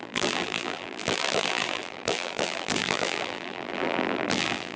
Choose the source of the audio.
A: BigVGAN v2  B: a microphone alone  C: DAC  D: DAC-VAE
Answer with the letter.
A